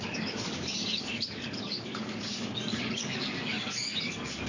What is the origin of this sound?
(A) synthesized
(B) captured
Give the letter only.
A